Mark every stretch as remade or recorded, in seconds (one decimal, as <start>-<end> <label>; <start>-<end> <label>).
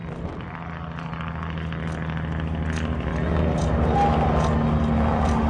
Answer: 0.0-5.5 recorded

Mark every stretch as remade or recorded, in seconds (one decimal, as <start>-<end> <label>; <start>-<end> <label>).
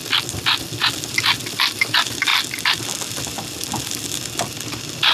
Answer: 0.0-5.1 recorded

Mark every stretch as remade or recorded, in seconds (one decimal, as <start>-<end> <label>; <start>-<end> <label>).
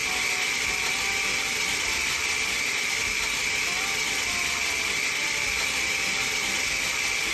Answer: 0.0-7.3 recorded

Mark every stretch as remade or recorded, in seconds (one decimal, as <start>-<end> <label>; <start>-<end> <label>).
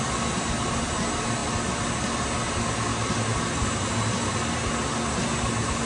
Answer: 0.0-5.9 recorded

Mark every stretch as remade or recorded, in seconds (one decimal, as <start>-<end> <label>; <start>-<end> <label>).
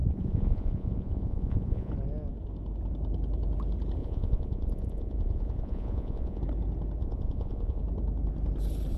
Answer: 0.0-1.9 remade; 1.9-4.0 recorded; 4.0-6.4 remade; 6.4-7.0 recorded; 7.0-7.8 remade; 7.8-9.0 recorded